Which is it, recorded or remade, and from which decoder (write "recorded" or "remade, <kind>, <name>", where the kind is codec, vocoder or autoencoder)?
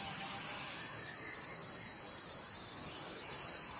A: recorded